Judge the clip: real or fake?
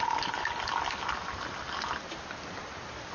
real